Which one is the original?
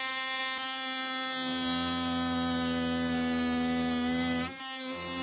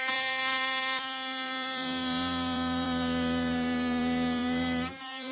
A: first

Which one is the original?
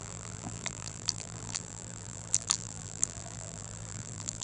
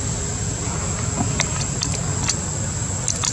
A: second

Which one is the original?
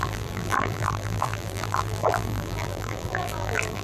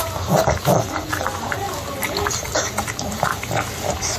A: second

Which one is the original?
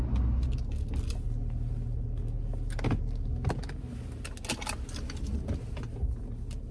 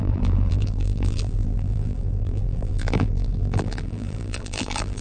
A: first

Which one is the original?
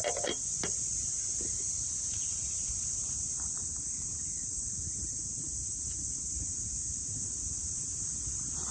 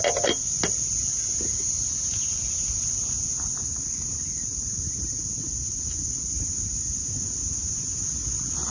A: second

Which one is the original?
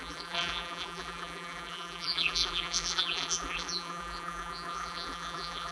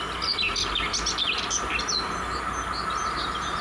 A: second